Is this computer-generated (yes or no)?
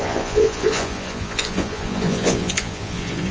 yes